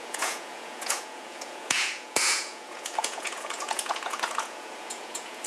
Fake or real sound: fake